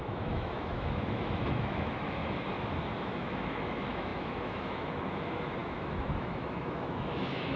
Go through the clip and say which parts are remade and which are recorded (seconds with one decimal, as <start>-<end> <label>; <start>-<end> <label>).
0.0-2.2 remade; 2.2-3.0 recorded; 3.0-7.6 remade